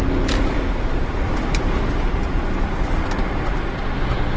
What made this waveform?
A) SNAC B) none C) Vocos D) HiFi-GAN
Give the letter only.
B